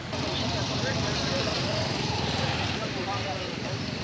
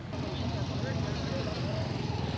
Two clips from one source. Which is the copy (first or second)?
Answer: first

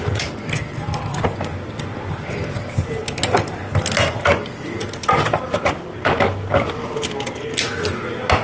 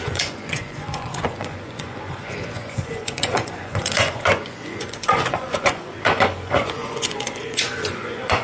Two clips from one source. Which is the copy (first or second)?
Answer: second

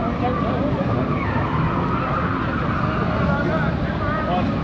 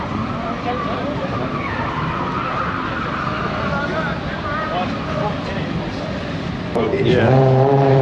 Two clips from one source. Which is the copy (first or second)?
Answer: second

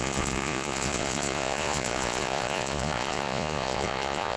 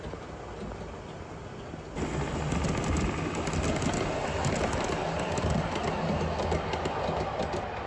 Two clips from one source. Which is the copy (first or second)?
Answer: first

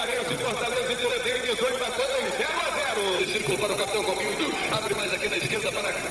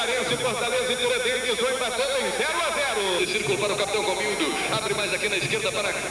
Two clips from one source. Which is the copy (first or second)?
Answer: first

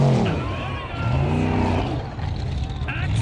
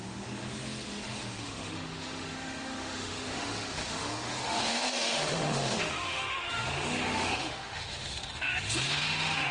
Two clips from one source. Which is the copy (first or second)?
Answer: second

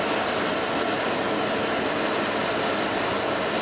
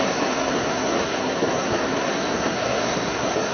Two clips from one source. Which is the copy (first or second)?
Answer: second